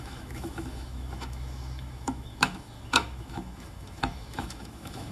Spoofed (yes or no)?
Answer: yes